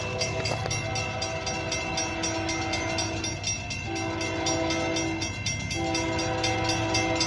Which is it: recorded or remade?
recorded